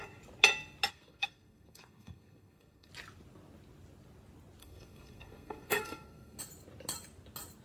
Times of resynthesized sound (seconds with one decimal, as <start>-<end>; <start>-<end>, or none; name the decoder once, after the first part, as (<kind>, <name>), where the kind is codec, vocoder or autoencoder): 0.9-2.9 (codec, SNAC); 4.6-6.4